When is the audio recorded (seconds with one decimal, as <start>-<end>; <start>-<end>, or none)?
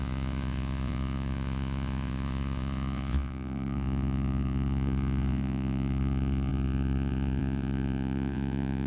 none